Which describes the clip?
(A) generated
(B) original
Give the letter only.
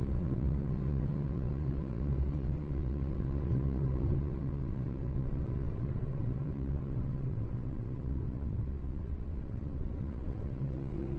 A